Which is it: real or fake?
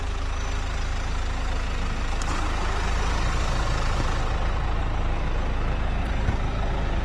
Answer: real